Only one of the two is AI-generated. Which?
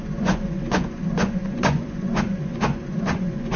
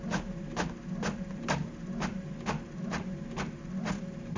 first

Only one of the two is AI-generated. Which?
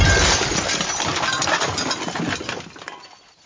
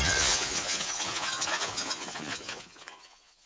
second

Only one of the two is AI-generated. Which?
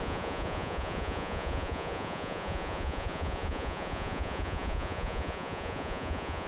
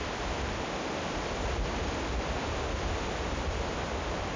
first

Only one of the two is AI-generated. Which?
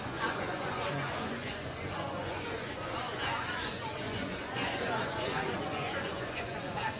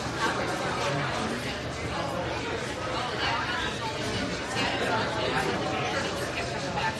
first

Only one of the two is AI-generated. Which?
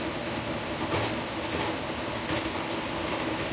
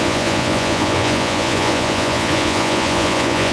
second